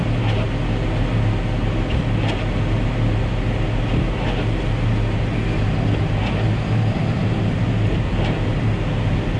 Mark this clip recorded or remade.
recorded